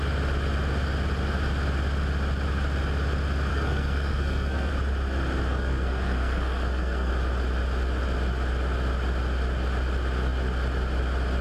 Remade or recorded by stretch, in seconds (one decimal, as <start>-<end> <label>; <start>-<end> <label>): 0.0-3.5 recorded; 3.5-4.7 remade; 4.7-5.5 recorded; 5.5-7.1 remade; 7.1-11.4 recorded